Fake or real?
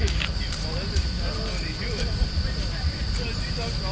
real